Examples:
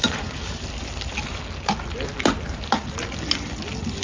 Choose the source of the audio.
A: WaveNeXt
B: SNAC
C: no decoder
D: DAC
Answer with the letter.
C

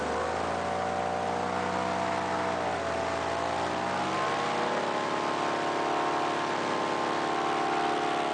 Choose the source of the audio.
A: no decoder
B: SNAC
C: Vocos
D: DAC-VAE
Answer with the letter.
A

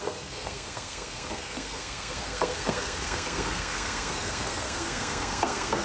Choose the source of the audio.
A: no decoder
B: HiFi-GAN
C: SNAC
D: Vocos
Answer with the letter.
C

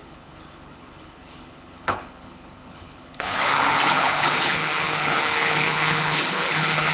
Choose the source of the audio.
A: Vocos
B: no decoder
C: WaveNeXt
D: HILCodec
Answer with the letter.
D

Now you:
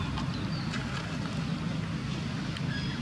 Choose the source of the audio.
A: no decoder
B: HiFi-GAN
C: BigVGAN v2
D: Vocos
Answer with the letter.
A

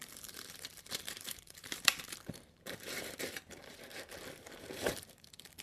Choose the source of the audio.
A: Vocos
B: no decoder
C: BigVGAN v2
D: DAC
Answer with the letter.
C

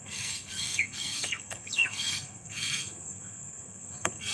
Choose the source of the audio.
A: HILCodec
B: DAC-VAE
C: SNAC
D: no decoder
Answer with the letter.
C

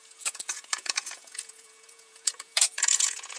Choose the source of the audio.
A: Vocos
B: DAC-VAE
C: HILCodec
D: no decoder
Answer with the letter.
A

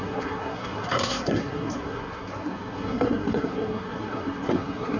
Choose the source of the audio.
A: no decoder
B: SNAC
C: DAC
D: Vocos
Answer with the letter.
B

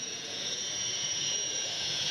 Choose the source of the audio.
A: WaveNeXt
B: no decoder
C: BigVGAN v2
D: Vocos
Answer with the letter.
D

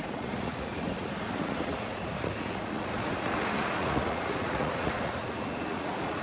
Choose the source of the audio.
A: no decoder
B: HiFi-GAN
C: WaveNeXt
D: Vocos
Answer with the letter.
D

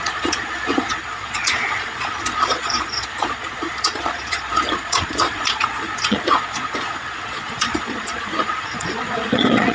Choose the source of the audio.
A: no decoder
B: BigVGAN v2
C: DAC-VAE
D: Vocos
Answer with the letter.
D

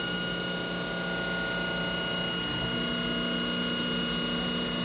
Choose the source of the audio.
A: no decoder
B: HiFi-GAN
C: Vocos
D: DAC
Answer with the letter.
A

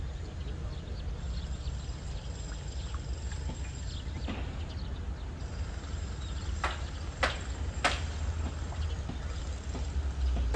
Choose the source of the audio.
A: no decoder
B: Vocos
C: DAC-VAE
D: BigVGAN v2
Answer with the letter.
A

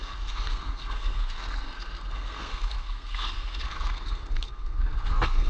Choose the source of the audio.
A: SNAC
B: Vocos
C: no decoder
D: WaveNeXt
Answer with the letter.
A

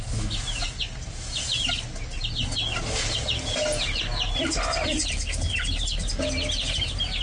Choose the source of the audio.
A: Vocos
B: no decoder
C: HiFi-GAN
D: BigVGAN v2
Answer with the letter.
B